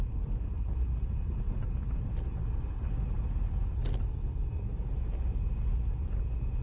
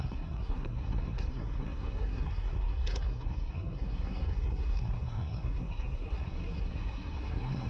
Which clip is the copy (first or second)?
second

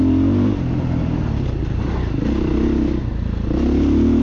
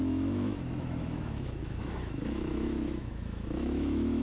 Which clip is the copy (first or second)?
second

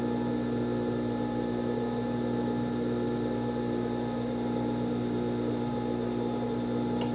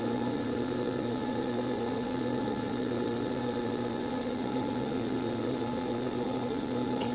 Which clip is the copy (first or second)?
second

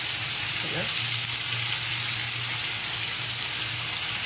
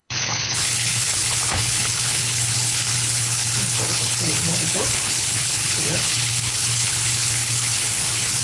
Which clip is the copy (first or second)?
second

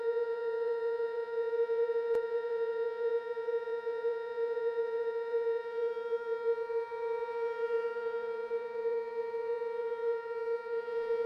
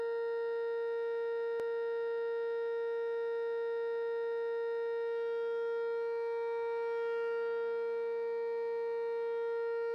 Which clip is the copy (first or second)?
first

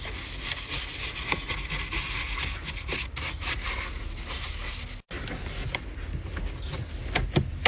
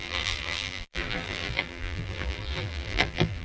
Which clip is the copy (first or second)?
second